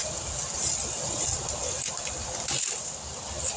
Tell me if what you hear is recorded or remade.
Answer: recorded